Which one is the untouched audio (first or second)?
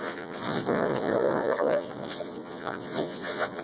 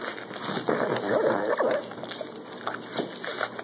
second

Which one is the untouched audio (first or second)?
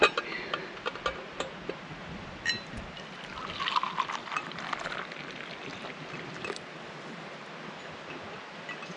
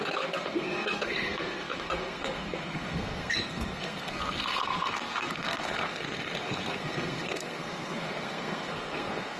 first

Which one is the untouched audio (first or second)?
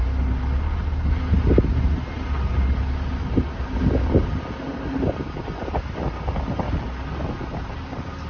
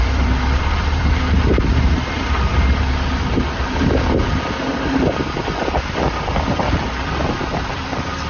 first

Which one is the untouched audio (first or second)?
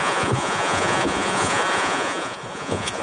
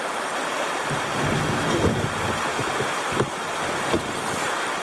second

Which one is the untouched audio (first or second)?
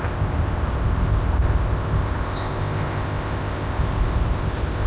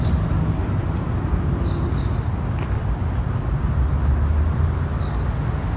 second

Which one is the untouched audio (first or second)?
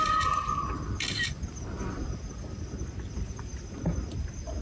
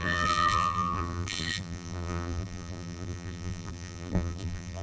first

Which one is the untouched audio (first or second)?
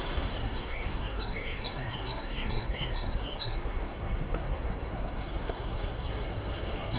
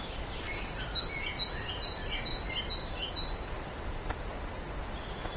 second